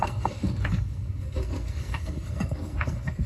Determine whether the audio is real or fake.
fake